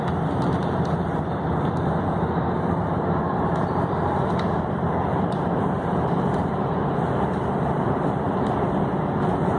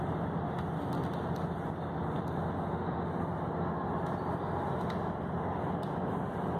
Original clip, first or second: second